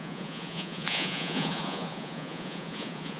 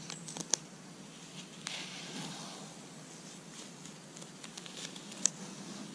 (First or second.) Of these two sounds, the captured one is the second